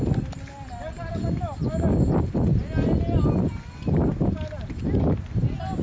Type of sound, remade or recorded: recorded